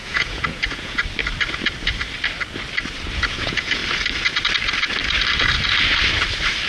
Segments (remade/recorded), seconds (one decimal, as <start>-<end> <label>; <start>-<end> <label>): 0.0-1.0 remade; 1.0-3.1 recorded; 3.1-3.8 remade; 3.8-6.7 recorded